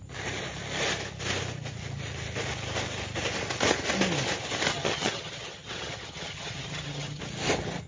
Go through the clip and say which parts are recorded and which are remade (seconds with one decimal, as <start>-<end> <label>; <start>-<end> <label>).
0.0-4.7 recorded; 4.7-7.2 remade; 7.2-7.9 recorded